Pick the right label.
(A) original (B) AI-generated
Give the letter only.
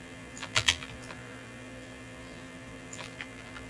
B